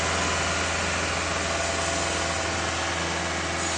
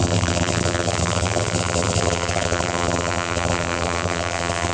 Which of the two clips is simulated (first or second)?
second